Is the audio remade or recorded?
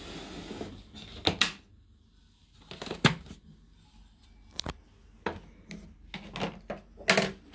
recorded